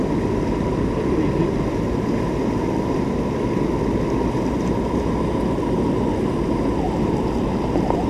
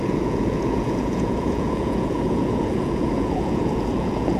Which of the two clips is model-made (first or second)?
second